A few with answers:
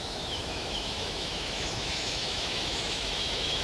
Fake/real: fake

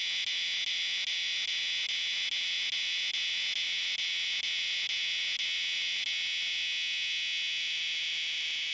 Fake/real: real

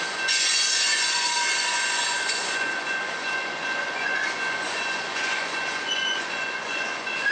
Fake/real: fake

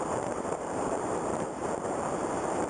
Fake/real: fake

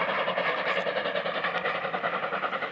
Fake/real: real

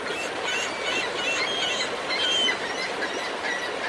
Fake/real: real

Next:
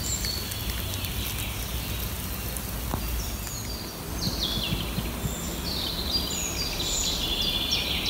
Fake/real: real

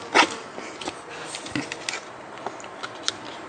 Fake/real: real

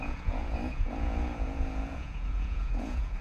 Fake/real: fake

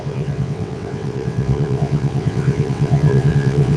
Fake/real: fake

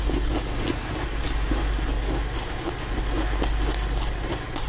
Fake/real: real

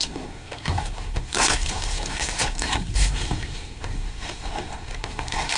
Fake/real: fake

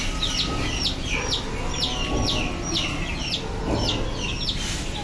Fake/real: real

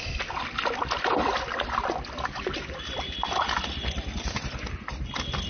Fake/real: real